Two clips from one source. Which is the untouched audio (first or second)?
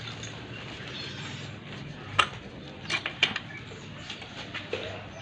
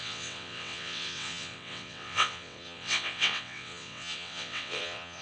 first